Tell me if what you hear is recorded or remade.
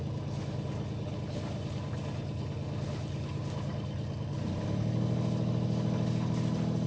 recorded